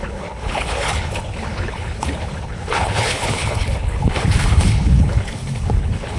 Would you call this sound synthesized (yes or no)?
yes